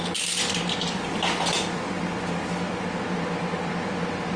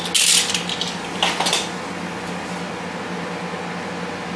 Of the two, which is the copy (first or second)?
first